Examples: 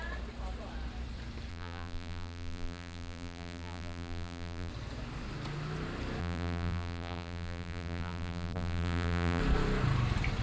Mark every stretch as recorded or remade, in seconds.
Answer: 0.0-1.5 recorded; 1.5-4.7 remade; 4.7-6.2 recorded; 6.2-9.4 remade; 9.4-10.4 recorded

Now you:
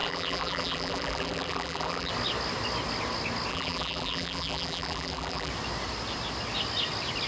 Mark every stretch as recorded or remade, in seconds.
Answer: 0.0-2.1 remade; 2.1-3.5 recorded; 3.5-5.5 remade; 5.5-7.3 recorded

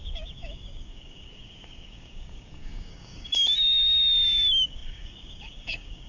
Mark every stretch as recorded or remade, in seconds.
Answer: 0.0-6.1 remade

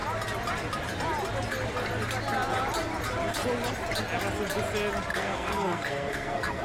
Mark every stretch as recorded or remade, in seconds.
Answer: 0.0-5.1 recorded; 5.1-6.6 remade